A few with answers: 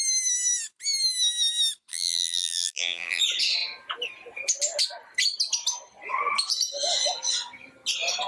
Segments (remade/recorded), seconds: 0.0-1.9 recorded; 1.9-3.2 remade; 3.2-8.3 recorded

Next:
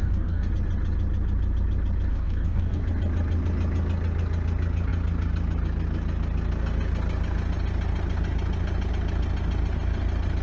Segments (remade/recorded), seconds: 0.0-0.5 remade; 0.5-2.1 recorded; 2.1-2.8 remade; 2.8-10.4 recorded

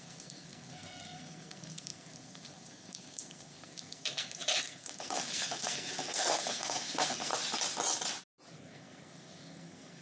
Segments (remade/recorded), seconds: 0.0-7.3 remade; 7.3-8.5 recorded; 8.5-10.0 remade

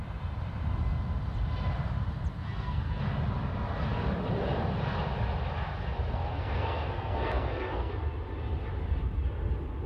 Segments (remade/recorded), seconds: 0.0-2.3 recorded; 2.3-3.0 remade; 3.0-6.1 recorded; 6.1-7.9 remade; 7.9-9.9 recorded

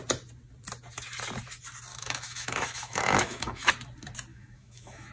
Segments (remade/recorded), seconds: 0.0-1.9 recorded; 1.9-3.7 remade; 3.7-4.3 recorded; 4.3-5.1 remade

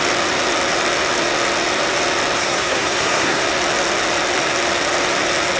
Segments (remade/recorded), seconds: 0.0-2.4 recorded; 2.4-3.4 remade; 3.4-5.6 recorded

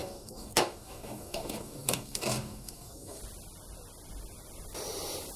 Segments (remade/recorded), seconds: 0.0-3.2 remade; 3.2-5.4 recorded

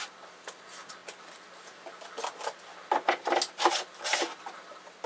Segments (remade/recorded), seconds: 0.0-5.1 recorded